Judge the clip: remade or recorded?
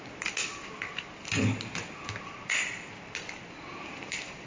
recorded